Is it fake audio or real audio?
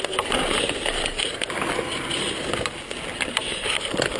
real